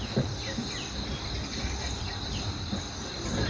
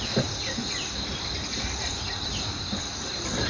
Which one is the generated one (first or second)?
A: second